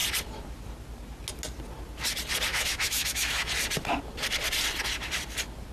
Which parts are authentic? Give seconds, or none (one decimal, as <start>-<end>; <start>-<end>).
0.0-2.5; 3.5-5.7